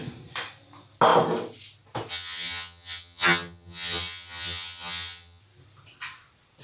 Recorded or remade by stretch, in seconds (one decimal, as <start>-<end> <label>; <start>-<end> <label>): 0.0-2.1 recorded; 2.1-5.4 remade; 5.4-6.6 recorded